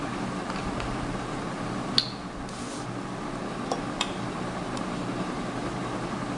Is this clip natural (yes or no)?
yes